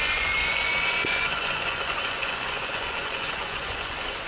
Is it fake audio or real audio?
fake